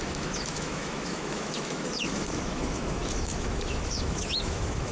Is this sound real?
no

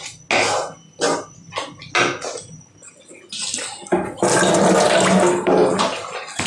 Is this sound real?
yes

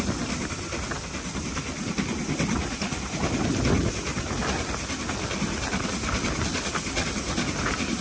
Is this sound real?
yes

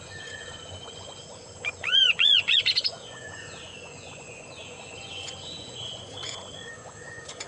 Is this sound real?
no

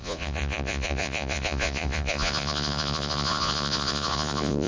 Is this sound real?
no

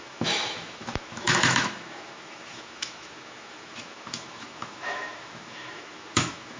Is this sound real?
no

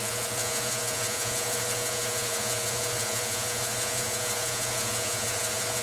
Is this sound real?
no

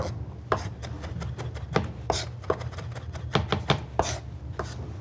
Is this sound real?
yes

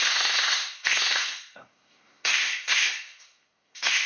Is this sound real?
no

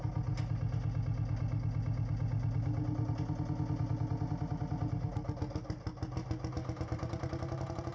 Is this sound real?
yes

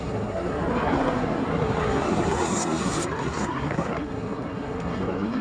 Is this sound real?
no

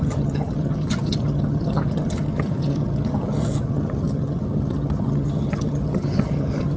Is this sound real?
no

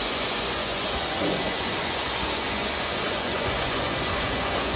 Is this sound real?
no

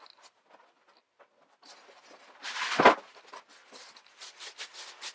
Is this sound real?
yes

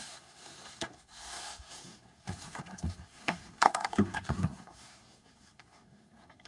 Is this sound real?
no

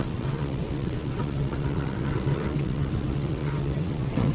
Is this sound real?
no